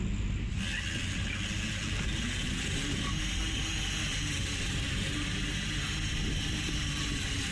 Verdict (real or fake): real